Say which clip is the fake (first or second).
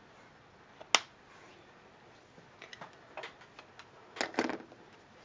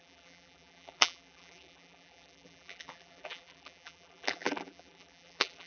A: second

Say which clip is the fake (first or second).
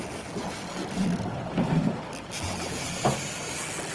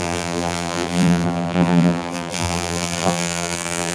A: second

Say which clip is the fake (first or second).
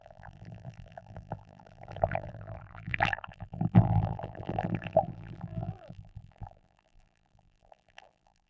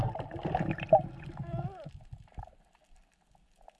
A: first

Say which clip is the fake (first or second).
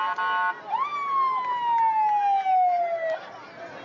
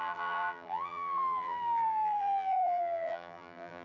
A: second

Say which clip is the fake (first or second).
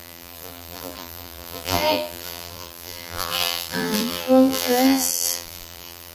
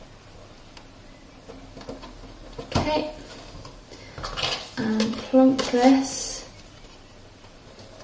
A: first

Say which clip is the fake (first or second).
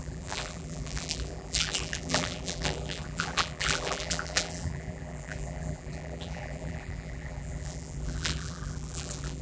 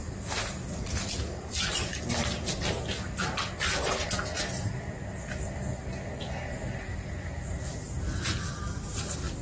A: first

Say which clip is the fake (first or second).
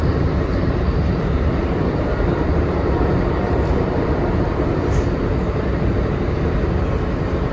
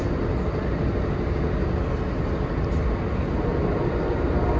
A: first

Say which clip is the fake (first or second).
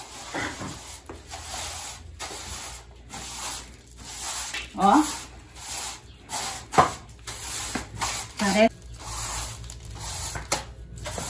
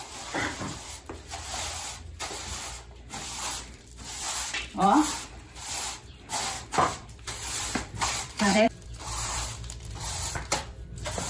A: second